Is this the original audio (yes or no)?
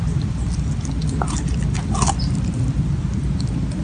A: no